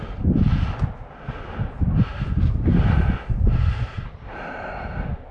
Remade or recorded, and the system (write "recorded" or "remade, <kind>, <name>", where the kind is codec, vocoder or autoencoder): recorded